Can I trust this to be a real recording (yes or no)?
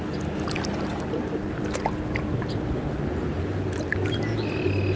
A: yes